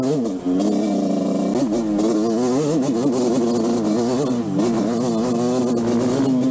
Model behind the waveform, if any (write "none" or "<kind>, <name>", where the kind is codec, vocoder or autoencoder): none